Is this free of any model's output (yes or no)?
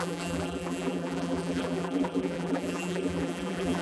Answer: no